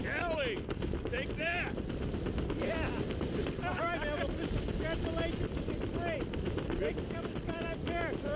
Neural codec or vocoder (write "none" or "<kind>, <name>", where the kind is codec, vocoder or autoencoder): vocoder, BigVGAN v2